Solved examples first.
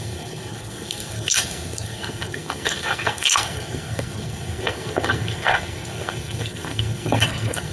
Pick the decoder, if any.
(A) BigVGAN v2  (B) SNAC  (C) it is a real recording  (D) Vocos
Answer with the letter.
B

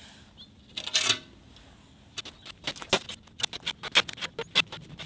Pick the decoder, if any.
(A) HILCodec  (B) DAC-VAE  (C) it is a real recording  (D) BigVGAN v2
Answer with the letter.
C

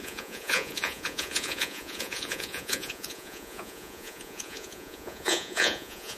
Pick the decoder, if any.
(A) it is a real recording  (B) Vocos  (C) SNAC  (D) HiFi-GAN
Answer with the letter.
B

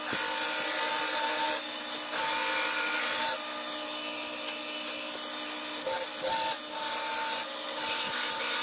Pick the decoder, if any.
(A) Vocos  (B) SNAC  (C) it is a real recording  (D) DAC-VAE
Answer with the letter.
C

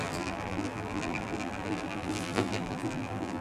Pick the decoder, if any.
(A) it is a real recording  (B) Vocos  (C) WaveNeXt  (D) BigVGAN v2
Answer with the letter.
D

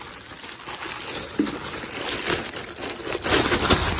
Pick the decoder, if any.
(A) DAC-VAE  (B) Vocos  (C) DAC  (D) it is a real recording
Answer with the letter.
D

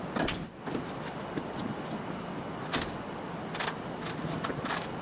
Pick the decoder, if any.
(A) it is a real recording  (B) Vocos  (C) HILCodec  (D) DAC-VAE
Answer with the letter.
A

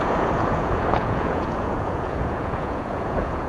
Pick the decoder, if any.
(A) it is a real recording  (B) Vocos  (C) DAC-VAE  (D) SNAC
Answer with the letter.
B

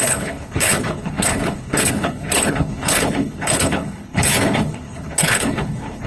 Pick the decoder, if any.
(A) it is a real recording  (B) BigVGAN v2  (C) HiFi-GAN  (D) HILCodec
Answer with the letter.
D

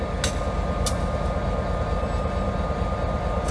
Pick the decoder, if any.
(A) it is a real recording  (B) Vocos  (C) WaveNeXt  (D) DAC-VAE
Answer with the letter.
A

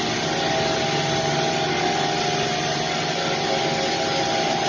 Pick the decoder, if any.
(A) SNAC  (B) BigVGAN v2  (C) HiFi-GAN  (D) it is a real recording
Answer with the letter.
D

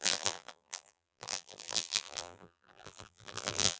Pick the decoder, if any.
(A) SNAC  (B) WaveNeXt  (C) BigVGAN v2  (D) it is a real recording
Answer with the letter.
C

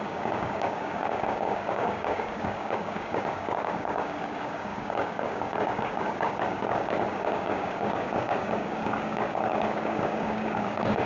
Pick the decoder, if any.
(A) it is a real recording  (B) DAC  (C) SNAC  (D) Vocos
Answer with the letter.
B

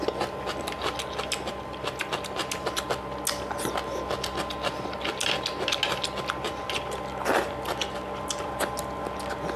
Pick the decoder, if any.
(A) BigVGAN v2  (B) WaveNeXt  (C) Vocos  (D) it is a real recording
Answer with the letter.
D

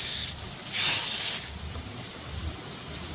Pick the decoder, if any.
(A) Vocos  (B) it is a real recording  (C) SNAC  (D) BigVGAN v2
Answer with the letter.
B